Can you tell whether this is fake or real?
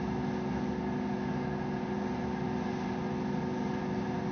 real